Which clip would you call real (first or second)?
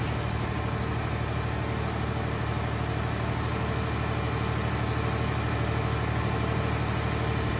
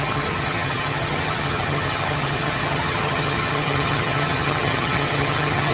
first